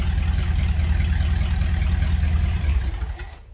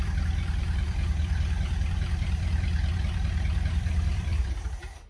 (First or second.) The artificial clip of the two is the second